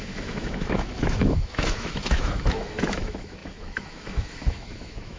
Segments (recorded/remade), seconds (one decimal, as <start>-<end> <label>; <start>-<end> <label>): 0.0-5.2 remade